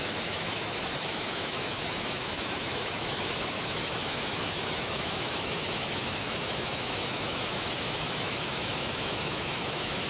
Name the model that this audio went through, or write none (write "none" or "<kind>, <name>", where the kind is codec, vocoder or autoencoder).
autoencoder, DAC-VAE